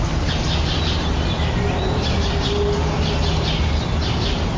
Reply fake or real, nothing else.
real